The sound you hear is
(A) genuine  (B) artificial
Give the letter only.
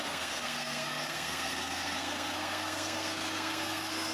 B